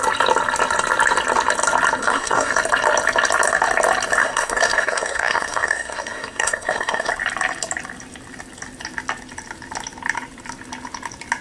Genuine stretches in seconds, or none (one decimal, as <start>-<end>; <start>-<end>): 0.0-2.0; 2.5-4.2; 7.1-11.4